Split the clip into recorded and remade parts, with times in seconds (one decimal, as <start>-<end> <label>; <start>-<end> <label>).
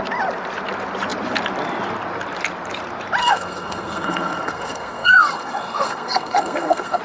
0.0-3.2 recorded; 3.2-7.0 remade